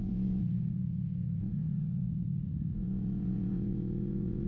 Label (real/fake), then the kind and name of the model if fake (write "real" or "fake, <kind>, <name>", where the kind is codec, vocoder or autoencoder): fake, vocoder, Vocos